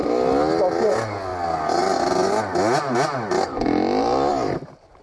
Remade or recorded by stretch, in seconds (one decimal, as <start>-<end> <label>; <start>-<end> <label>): 0.0-5.0 recorded